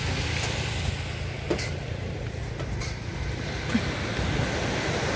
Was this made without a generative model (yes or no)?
yes